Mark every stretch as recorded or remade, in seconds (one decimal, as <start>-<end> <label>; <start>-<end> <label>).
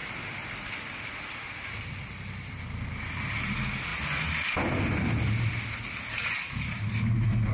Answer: 0.0-7.5 recorded